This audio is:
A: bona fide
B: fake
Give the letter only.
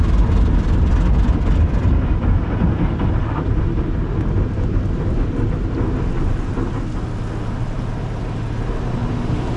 A